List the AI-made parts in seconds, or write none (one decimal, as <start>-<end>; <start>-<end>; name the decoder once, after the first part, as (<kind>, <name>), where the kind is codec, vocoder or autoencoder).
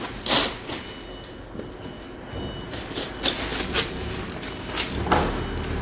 3.5-4.2 (vocoder, BigVGAN v2)